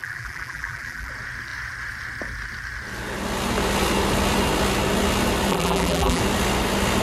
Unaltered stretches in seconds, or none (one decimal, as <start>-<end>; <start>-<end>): 1.1-5.5; 6.2-7.0